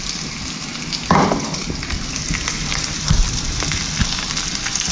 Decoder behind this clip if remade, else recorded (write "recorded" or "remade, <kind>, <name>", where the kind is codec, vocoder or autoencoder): recorded